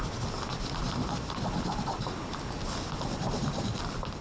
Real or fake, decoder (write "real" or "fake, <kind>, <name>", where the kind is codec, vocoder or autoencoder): fake, vocoder, BigVGAN v2